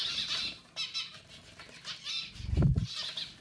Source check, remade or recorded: recorded